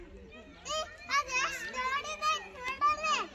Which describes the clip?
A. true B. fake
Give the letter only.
A